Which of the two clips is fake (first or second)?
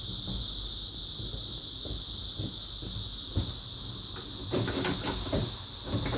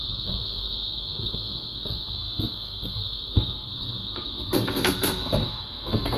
second